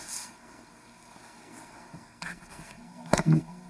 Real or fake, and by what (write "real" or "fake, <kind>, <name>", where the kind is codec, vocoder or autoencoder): fake, codec, SNAC